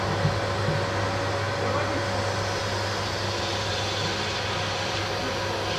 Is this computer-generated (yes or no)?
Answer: no